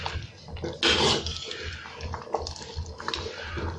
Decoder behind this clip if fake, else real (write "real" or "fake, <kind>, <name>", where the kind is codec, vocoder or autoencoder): real